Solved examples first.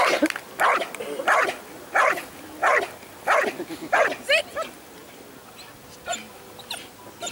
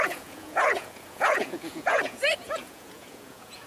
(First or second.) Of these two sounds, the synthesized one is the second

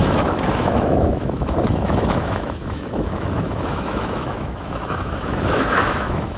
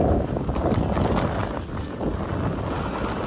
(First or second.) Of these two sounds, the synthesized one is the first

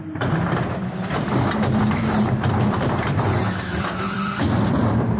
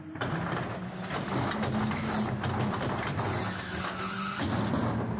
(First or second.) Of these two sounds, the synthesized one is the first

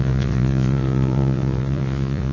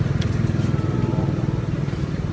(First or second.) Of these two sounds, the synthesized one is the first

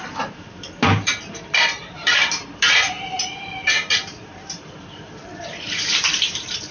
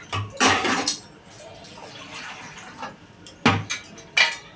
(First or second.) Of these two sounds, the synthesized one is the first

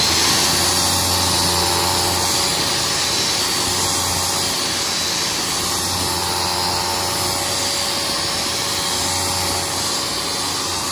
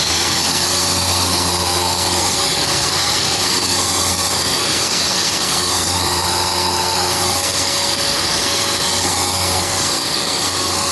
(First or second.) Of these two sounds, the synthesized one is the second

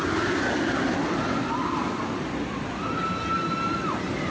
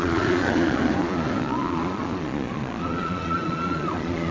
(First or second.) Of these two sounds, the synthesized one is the second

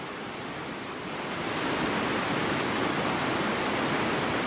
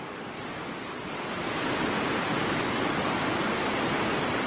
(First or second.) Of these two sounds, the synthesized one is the first